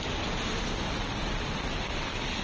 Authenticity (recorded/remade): recorded